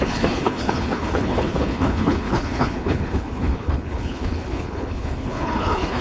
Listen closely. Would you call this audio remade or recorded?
remade